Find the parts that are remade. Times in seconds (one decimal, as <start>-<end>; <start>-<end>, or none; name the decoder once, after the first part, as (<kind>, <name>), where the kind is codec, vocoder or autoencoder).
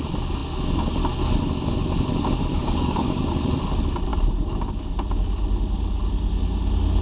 2.5-3.2 (codec, DAC)